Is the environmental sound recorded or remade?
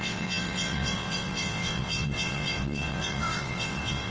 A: remade